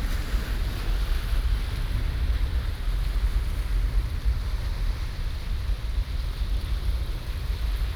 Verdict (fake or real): real